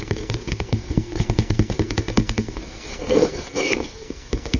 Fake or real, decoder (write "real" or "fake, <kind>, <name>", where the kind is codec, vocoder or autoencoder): fake, codec, SNAC